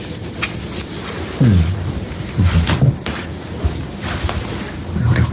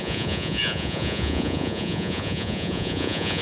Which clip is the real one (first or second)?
first